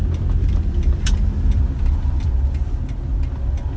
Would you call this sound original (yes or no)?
no